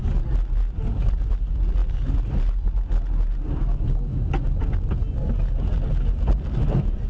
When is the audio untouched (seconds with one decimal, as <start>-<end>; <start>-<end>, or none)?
0.0-7.1